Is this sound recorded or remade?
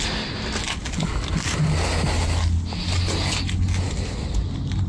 recorded